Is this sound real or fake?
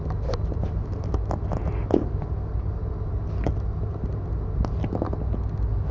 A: real